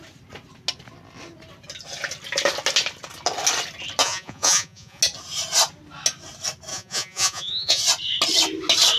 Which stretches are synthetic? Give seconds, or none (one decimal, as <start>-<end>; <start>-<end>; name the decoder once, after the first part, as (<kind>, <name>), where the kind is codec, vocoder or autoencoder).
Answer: 4.0-5.0 (vocoder, Vocos); 6.7-7.8